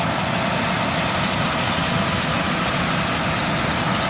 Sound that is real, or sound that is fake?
real